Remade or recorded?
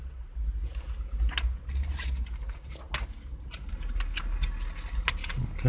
recorded